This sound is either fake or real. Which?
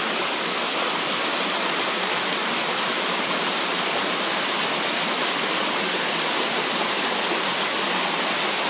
real